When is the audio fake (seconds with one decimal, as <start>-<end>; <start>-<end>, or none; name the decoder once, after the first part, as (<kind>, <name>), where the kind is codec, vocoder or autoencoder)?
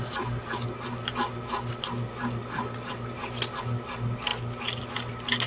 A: none